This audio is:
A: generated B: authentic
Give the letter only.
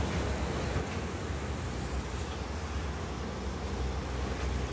B